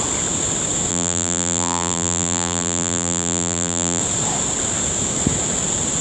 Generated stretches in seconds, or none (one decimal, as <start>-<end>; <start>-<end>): 0.9-4.0

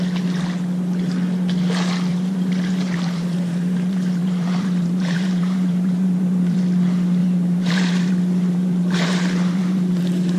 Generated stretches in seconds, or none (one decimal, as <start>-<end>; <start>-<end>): 2.1-6.6; 7.2-10.0

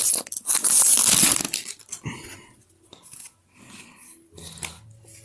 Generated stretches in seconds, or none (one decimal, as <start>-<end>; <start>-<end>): none

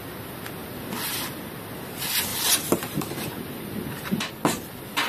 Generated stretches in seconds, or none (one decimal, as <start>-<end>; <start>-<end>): 2.3-4.3

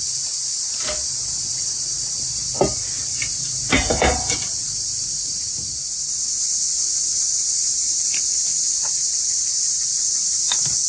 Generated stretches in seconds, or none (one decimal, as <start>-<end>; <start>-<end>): 3.1-5.4

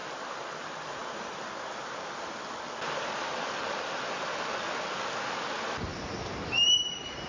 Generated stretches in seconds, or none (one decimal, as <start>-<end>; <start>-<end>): 5.9-7.3

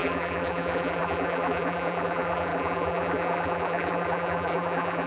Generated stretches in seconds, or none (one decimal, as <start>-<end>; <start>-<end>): 0.0-5.1

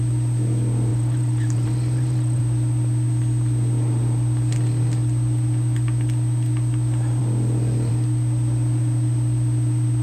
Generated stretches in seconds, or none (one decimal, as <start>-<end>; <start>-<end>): 0.9-2.4